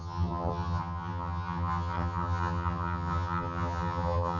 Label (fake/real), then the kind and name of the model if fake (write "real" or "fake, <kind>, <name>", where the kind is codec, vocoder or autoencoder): fake, vocoder, HiFi-GAN